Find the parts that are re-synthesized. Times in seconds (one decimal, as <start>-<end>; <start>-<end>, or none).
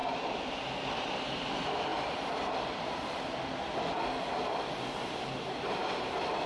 0.9-1.9; 4.8-6.5